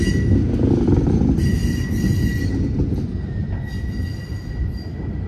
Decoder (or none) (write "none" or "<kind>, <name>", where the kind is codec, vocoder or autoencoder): none